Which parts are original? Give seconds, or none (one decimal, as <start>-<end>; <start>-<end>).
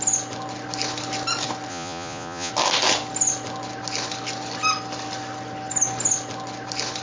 0.0-1.7; 2.5-7.0